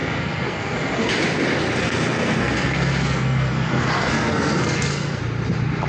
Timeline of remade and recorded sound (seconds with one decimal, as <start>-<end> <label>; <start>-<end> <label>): 0.0-1.1 remade; 1.1-1.8 recorded; 1.8-5.2 remade; 5.2-5.9 recorded